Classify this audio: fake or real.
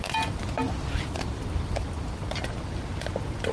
real